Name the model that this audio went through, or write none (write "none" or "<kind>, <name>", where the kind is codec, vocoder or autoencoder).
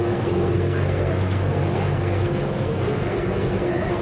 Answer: codec, SNAC